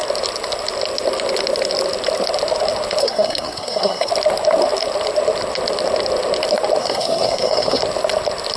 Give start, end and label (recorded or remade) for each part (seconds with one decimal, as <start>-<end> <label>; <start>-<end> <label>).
0.0-3.0 recorded; 3.0-4.1 remade; 4.1-6.8 recorded; 6.8-7.8 remade; 7.8-8.6 recorded